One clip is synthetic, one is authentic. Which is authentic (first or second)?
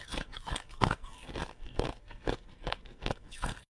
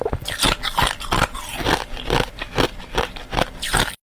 second